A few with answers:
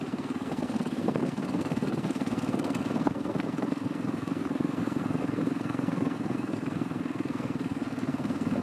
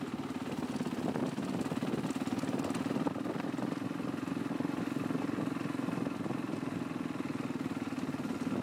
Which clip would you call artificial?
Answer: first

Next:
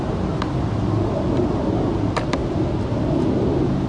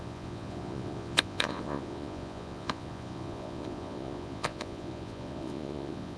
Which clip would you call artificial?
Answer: second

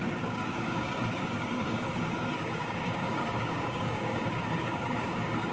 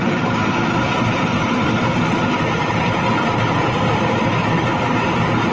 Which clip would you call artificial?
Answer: first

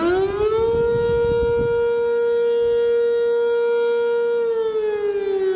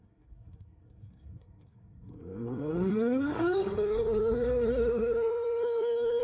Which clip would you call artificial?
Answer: second